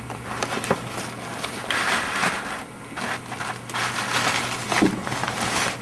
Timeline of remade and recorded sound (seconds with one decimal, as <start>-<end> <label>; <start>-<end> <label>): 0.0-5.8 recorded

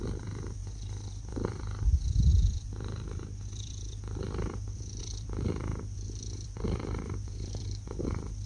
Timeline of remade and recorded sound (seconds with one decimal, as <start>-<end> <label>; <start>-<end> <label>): 0.0-0.6 remade; 0.6-1.2 recorded; 1.2-8.5 remade

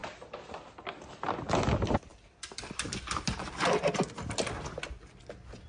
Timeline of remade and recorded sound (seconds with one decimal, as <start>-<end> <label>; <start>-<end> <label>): 0.0-5.7 recorded

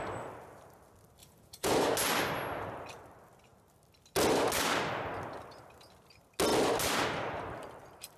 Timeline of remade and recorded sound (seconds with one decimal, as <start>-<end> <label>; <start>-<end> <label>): 0.0-1.2 recorded; 1.2-1.7 remade; 1.7-8.2 recorded

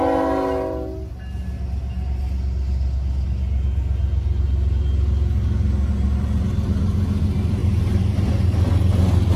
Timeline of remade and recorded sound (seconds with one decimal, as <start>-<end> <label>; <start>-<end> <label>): 0.0-7.6 recorded; 7.6-8.3 remade; 8.3-9.4 recorded